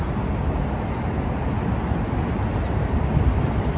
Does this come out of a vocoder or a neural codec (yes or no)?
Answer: no